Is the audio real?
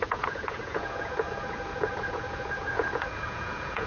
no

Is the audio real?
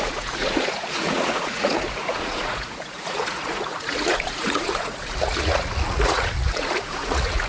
no